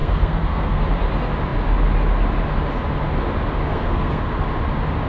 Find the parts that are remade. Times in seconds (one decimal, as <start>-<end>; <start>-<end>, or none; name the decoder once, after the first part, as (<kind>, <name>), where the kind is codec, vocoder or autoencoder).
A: 0.0-0.8 (codec, SNAC); 3.7-4.4